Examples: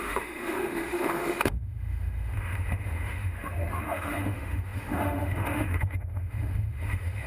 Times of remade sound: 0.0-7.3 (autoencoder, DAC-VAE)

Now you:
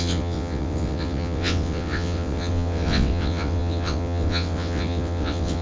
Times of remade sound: 0.0-5.6 (vocoder, WaveNeXt)

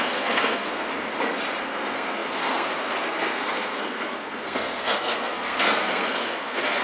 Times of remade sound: 0.0-0.9 (codec, SNAC); 1.6-6.8